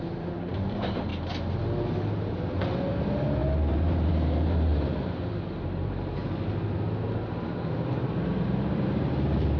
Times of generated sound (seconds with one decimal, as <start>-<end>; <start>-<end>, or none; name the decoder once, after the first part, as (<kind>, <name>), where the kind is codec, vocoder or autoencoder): 0.0-1.1 (vocoder, BigVGAN v2); 2.1-4.7; 5.6-6.2; 7.9-9.6